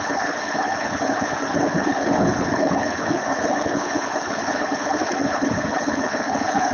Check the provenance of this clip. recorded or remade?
remade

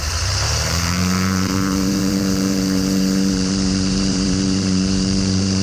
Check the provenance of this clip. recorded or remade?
remade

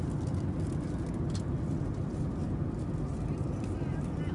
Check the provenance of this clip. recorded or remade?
recorded